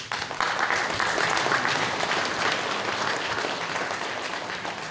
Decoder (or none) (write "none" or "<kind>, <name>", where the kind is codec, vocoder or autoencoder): none